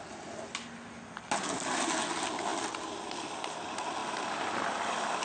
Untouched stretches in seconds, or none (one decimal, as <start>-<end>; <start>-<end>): 0.0-5.2